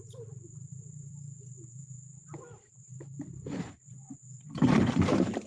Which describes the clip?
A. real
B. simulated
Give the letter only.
B